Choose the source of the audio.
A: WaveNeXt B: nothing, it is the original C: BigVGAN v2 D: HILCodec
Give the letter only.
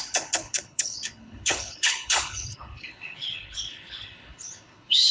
D